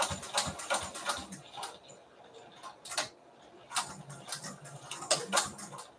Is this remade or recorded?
recorded